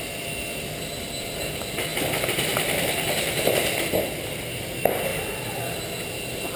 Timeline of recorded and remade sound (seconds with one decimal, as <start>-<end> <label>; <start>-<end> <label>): 0.0-1.9 recorded; 1.9-3.4 remade; 3.4-6.6 recorded